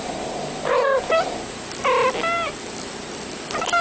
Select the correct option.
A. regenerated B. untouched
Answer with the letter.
B